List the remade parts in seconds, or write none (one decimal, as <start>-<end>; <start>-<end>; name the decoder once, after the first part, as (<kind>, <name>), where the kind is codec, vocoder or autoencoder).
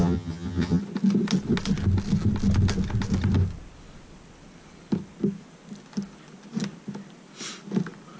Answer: 0.0-0.8 (vocoder, HiFi-GAN)